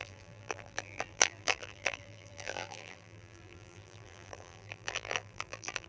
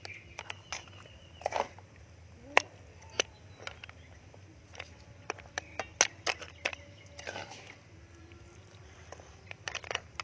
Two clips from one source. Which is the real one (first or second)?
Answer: second